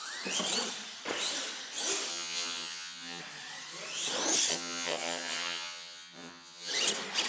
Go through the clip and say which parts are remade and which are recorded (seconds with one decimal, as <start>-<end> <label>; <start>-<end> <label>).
0.0-2.1 recorded; 2.1-3.2 remade; 3.2-4.5 recorded; 4.5-6.7 remade; 6.7-7.3 recorded